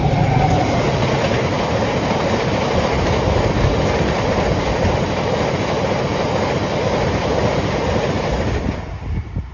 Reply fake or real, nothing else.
real